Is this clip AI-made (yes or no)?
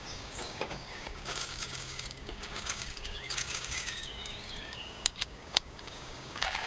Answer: yes